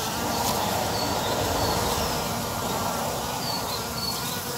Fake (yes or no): yes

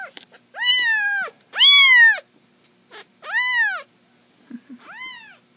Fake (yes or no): no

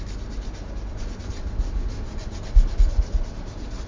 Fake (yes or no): no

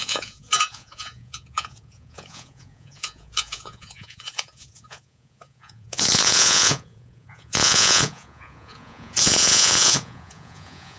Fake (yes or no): yes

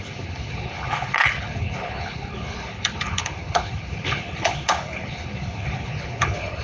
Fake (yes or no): yes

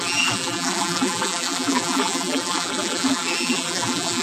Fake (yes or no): yes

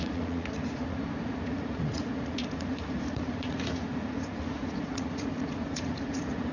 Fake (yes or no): yes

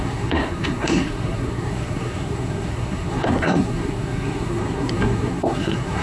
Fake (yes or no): yes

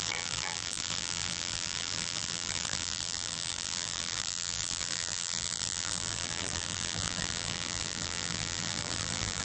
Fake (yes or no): yes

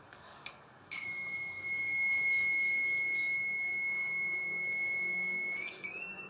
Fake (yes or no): yes